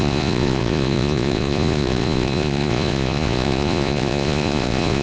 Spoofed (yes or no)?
yes